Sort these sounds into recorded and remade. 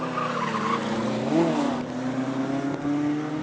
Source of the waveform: recorded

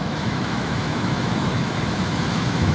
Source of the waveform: remade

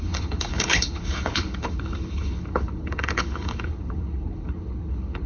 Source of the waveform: remade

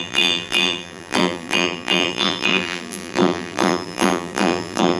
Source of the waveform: remade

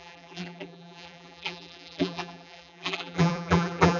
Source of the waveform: remade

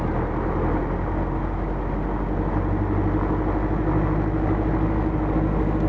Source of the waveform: recorded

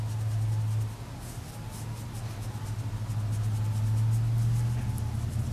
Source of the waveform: recorded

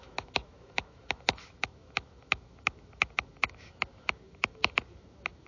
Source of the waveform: remade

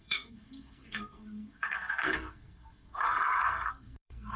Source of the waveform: remade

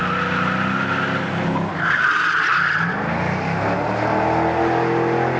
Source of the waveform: recorded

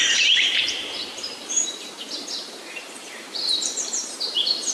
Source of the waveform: remade